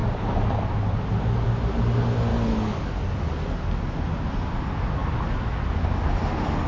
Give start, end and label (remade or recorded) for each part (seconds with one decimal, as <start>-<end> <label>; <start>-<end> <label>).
0.0-6.7 recorded